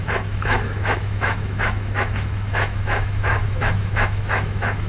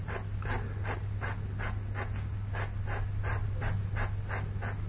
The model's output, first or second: first